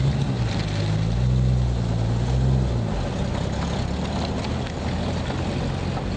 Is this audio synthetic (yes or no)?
no